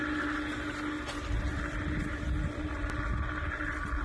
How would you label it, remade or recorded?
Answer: recorded